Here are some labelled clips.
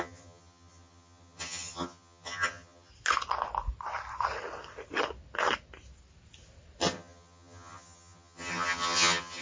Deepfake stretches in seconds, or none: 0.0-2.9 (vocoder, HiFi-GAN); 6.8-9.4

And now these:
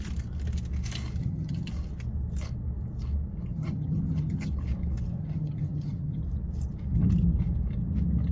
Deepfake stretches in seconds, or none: 1.2-1.7 (vocoder, HiFi-GAN); 3.5-4.5; 5.2-6.2

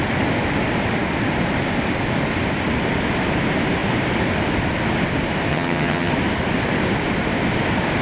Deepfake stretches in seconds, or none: 5.5-6.1 (vocoder, HiFi-GAN)

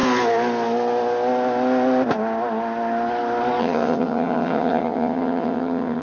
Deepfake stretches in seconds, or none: 3.6-6.0 (vocoder, HiFi-GAN)

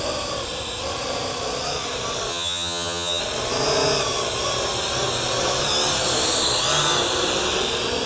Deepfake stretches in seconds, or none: 2.3-3.2 (vocoder, HiFi-GAN)

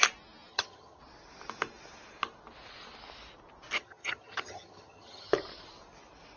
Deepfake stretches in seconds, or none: 0.5-1.0 (vocoder, HiFi-GAN); 3.8-5.3

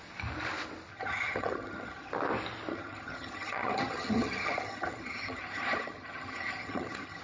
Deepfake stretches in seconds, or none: 0.9-2.1 (vocoder, HiFi-GAN); 2.7-7.2

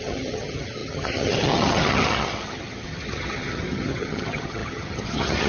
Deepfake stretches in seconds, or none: 0.0-5.5 (vocoder, HiFi-GAN)